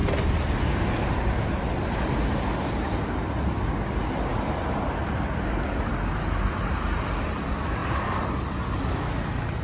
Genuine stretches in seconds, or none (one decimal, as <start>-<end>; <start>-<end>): 0.0-9.6